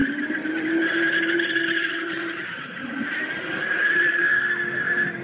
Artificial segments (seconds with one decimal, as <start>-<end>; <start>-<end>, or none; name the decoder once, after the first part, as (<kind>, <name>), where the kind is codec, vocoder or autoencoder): 0.0-3.1 (vocoder, BigVGAN v2)